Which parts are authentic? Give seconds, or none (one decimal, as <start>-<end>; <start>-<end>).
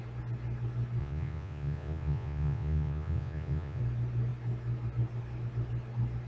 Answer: 0.0-1.0; 3.8-6.3